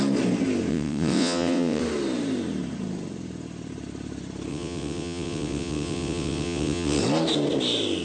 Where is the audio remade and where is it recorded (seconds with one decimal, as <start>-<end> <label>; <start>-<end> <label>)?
0.0-0.7 recorded; 0.7-1.8 remade; 1.8-4.5 recorded; 4.5-7.0 remade; 7.0-8.0 recorded